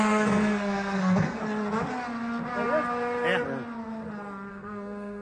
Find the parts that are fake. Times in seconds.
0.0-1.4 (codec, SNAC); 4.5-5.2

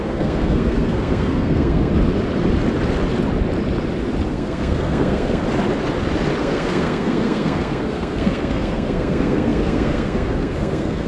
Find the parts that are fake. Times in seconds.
0.0-1.9 (codec, SNAC); 4.3-5.4; 6.4-11.1

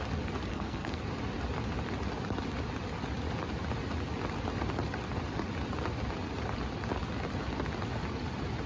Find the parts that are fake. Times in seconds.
0.5-1.0 (codec, SNAC)

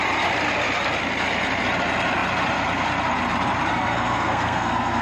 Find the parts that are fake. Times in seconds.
3.7-5.0 (codec, SNAC)

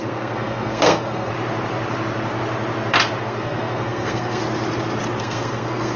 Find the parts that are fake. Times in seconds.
0.0-1.3 (codec, SNAC); 3.2-4.4; 5.2-6.0

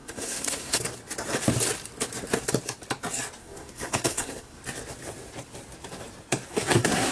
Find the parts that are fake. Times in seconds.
0.0-0.8 (codec, SNAC); 3.4-4.6; 6.5-7.1

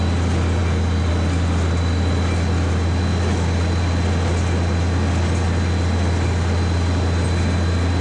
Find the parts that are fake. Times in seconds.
none